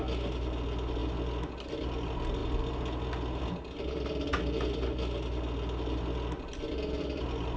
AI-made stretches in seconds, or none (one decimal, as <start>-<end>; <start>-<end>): none